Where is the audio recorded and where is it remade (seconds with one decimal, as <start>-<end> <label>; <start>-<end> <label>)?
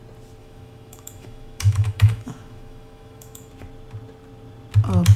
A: 0.0-0.4 recorded; 0.4-3.5 remade; 3.5-5.2 recorded